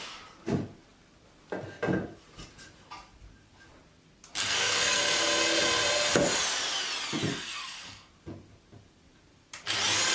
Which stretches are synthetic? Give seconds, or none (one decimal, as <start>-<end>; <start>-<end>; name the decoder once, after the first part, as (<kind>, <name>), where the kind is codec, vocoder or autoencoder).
4.4-5.0 (codec, SNAC); 7.3-8.1